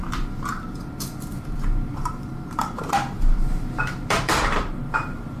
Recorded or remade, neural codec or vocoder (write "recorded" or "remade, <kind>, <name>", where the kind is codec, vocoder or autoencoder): remade, vocoder, BigVGAN v2